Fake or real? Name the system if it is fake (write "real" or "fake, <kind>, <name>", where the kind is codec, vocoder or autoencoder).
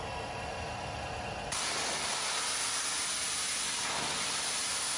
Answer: real